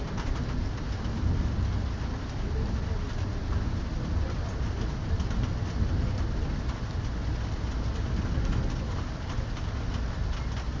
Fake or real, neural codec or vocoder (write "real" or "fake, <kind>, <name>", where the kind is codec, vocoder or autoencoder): real